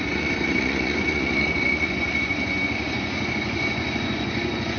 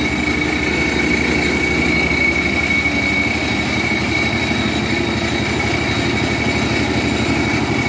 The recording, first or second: second